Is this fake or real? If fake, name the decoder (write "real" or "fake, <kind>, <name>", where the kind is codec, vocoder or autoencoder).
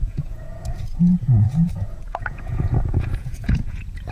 fake, vocoder, Vocos